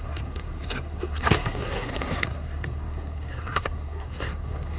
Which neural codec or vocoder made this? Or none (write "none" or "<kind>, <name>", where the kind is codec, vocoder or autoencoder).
codec, SNAC